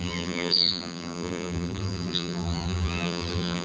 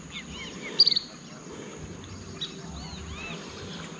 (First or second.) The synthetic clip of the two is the first